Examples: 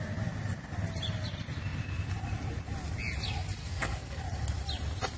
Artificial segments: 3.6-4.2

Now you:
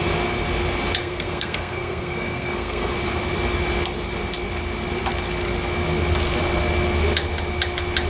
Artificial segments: 1.0-2.9

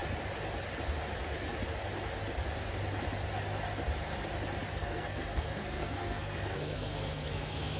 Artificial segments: 4.7-7.8

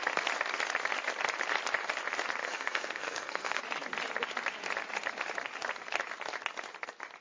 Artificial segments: 2.4-3.6

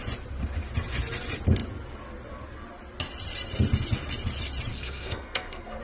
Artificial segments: 4.7-5.8